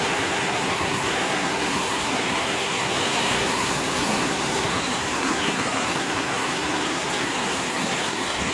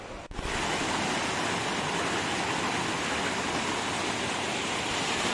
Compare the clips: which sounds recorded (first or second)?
second